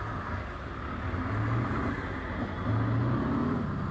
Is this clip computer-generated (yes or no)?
no